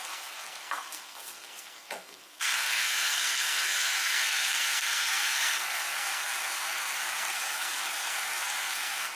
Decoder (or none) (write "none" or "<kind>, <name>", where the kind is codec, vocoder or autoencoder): codec, SNAC